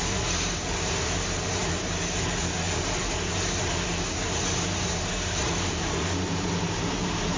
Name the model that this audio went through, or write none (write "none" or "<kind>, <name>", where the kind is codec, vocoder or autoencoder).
vocoder, BigVGAN v2